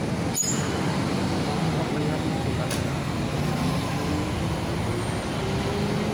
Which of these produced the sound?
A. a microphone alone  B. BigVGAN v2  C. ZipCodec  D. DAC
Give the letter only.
A